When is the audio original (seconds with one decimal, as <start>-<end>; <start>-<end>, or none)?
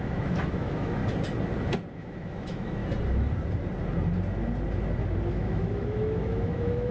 1.0-1.9; 2.8-5.3